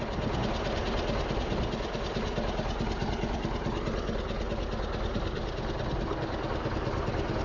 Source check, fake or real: real